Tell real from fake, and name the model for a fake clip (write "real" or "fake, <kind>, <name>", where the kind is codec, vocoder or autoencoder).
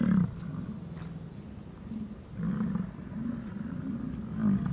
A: real